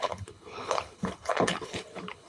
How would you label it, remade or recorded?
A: remade